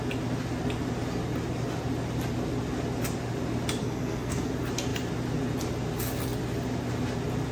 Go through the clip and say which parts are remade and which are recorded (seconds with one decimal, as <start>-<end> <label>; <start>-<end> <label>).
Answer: 0.0-3.8 recorded; 3.8-4.5 remade; 4.5-7.5 recorded